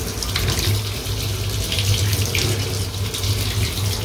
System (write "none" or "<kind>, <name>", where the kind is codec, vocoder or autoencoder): none